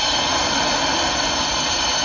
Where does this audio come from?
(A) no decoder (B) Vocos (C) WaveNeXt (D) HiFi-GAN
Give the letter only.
A